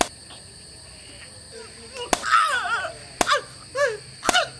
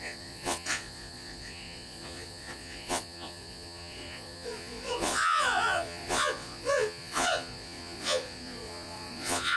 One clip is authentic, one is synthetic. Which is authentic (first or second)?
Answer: first